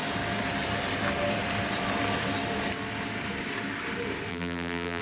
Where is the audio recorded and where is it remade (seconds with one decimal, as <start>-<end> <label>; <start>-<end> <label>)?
0.0-4.3 recorded; 4.3-5.0 remade